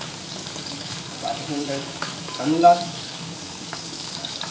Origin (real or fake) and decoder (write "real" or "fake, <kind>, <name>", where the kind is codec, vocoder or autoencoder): fake, codec, DAC